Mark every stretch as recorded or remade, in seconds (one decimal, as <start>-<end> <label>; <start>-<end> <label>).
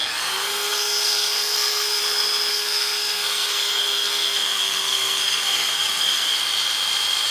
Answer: 0.0-2.0 remade; 2.0-2.5 recorded; 2.5-6.4 remade; 6.4-7.3 recorded